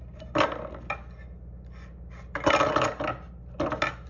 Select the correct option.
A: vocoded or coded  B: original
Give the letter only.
B